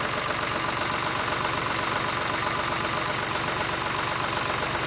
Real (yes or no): yes